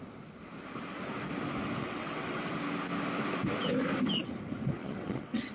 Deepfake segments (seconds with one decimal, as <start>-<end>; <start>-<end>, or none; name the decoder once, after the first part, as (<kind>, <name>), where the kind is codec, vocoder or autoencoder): 1.8-2.5 (vocoder, WaveNeXt); 4.8-5.5